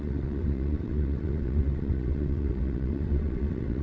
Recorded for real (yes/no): no